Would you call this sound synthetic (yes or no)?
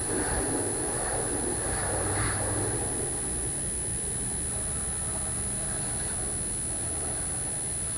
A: no